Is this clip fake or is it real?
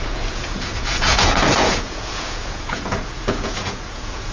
fake